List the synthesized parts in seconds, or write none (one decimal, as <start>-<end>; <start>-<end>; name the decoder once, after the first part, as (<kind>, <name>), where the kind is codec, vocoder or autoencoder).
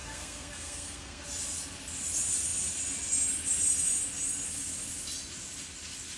0.0-1.2 (codec, SNAC)